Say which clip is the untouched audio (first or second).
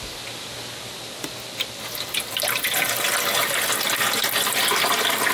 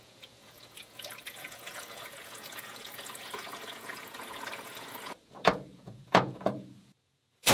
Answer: first